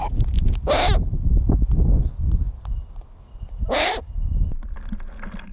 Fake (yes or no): no